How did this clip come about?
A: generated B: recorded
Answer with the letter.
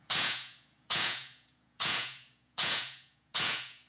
A